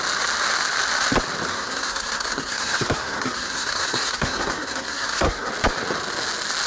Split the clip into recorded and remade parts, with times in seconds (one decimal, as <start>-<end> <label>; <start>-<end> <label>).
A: 0.0-1.5 recorded; 1.5-5.5 remade; 5.5-6.7 recorded